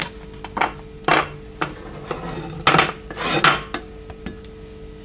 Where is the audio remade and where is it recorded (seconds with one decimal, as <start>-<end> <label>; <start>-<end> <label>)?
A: 0.0-5.0 recorded